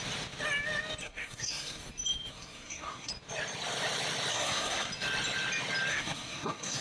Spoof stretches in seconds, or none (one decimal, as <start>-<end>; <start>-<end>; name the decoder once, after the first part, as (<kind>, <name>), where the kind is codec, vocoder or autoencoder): 1.0-1.8 (codec, SNAC); 2.3-3.1; 4.3-4.9; 5.9-6.8